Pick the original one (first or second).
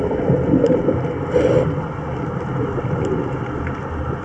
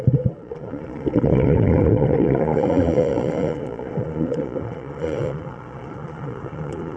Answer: first